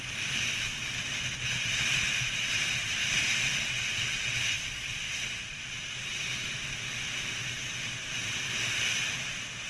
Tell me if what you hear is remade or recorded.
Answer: recorded